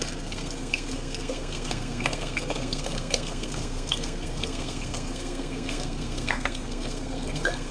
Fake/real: fake